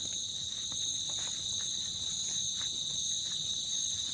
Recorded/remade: recorded